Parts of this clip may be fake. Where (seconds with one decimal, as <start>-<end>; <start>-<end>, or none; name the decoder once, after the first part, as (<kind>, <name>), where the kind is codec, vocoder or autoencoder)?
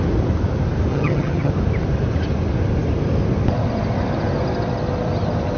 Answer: 0.9-1.5 (vocoder, HiFi-GAN)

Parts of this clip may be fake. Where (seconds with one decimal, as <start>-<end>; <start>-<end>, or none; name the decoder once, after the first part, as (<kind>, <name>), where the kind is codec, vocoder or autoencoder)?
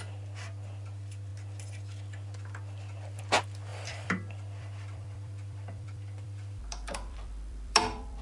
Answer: 3.7-8.2 (vocoder, BigVGAN v2)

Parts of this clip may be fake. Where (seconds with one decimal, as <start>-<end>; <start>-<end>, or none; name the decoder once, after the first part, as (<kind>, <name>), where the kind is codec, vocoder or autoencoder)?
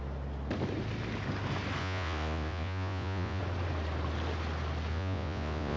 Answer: 1.8-3.4 (vocoder, Vocos); 4.9-5.8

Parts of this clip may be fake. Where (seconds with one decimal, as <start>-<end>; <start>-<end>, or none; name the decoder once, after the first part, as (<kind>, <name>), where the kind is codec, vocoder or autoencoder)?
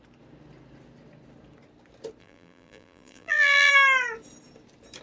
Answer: 2.2-3.7 (vocoder, BigVGAN v2)